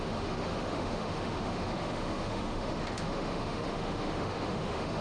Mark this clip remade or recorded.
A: remade